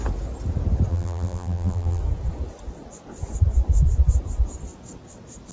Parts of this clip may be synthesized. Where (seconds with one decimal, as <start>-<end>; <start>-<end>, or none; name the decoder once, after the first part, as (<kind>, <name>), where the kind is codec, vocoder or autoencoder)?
0.9-2.0 (vocoder, BigVGAN v2)